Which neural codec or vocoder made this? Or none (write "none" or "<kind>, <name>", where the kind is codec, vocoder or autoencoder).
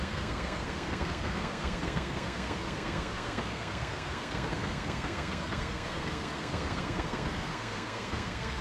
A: codec, SNAC